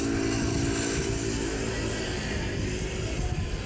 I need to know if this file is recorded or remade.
recorded